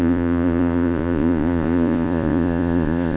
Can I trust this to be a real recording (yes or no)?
no